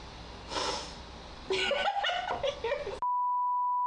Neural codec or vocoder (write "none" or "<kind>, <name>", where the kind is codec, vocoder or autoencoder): none